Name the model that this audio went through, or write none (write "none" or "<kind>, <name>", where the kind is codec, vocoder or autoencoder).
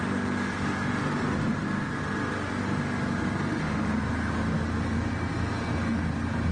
none